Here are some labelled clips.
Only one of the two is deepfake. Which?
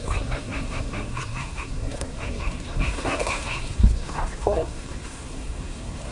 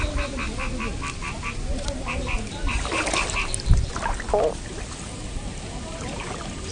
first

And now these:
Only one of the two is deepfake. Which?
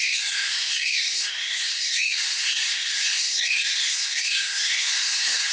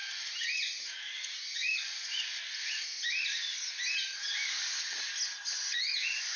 first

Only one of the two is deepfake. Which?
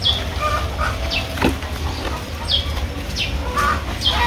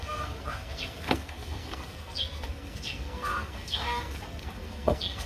second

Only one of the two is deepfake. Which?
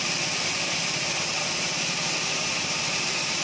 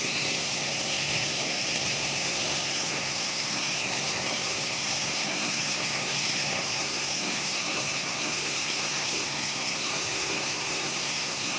second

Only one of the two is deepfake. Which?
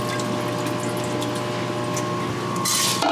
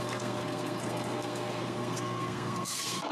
second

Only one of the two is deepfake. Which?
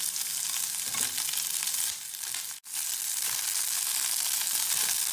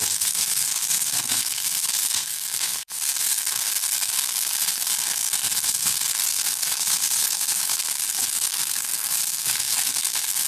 second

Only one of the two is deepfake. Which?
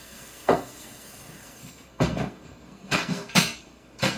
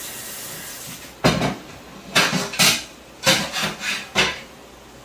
first